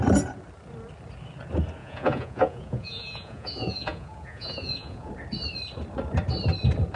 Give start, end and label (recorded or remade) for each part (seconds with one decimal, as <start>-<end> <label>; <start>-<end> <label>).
0.0-1.8 recorded; 1.8-5.1 remade; 5.1-7.0 recorded